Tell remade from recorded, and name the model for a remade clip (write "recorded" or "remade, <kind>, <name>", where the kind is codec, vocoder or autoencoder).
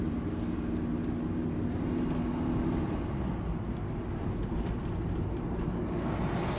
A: recorded